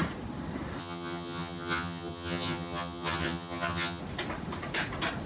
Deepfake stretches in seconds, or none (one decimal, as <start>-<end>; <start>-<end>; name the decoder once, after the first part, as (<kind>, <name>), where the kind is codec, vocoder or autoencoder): 0.8-4.0 (vocoder, HiFi-GAN)